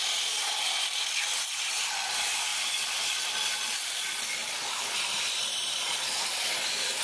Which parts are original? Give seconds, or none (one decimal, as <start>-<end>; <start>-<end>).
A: 0.0-2.5; 3.1-4.4; 5.8-7.0